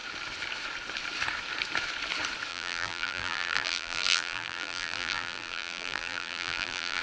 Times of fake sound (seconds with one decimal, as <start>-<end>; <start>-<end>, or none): 2.5-7.0